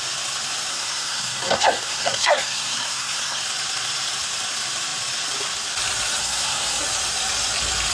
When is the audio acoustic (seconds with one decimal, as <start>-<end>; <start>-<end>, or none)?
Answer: 0.0-0.7; 3.4-6.2; 6.8-7.9